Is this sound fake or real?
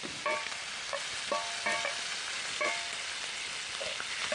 real